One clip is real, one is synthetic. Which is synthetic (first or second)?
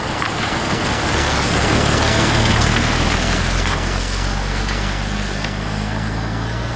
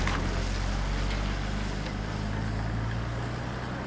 first